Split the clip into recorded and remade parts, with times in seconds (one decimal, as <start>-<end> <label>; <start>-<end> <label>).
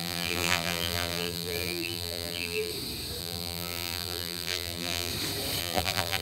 0.0-2.7 remade; 2.7-3.2 recorded; 3.2-5.1 remade; 5.1-5.6 recorded; 5.6-6.2 remade